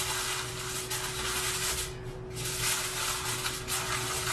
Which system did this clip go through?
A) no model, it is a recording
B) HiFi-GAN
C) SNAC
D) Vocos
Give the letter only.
A